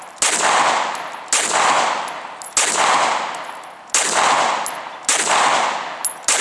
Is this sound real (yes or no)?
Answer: yes